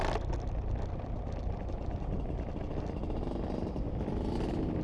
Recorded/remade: recorded